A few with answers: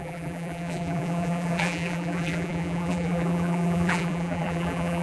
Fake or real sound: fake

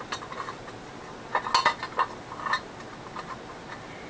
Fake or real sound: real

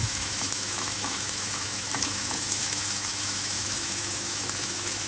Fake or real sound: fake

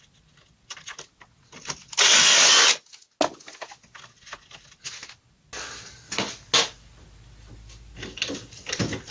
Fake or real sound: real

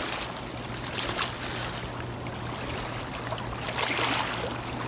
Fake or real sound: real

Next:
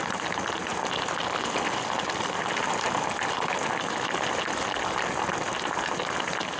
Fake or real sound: real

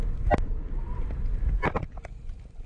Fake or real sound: real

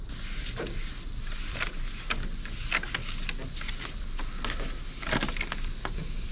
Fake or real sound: real